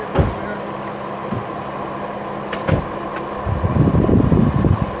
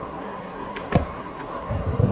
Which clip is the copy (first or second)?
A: second